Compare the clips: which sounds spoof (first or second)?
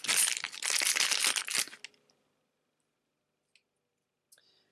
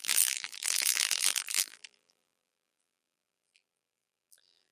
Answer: second